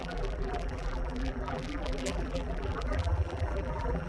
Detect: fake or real fake